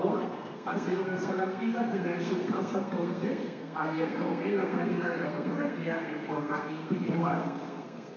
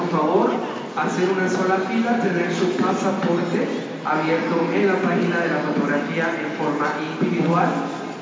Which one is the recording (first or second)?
second